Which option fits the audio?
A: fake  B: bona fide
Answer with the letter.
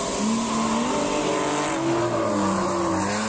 B